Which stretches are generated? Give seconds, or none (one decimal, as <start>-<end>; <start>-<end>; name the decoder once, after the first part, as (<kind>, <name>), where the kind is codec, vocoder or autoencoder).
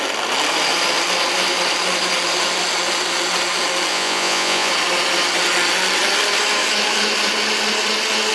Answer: 3.9-4.7 (vocoder, Vocos)